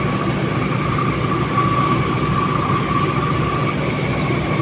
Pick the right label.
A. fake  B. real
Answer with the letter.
B